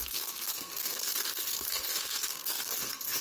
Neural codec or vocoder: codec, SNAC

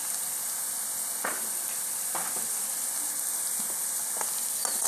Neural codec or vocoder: none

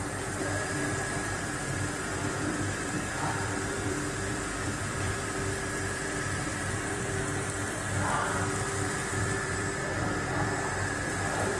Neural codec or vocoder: vocoder, BigVGAN v2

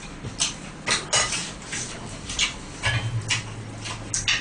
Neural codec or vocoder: none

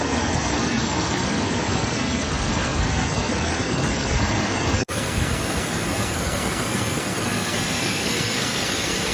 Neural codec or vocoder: codec, SNAC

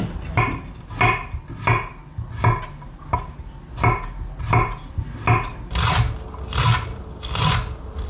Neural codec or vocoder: none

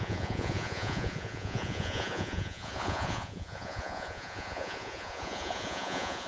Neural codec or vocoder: vocoder, Vocos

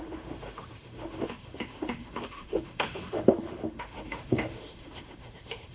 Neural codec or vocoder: autoencoder, DAC-VAE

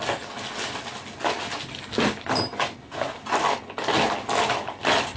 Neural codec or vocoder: none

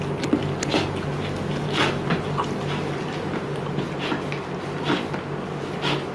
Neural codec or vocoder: none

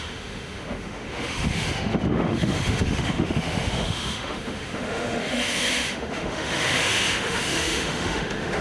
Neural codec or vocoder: autoencoder, DAC-VAE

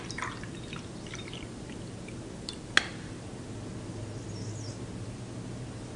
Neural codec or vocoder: none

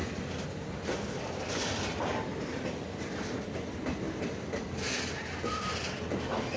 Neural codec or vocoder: none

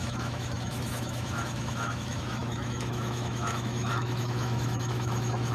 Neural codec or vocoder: autoencoder, DAC-VAE